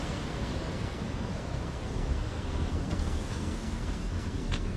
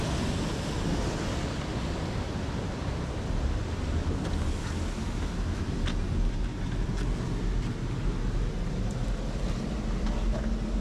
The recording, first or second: second